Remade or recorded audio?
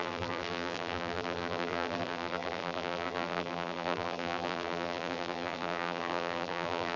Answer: remade